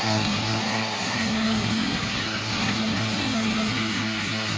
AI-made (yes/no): yes